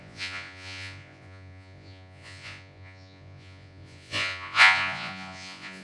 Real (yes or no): no